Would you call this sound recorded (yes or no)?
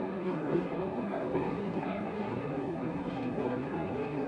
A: no